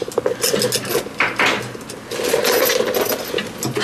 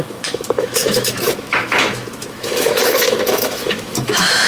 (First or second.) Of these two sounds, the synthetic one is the second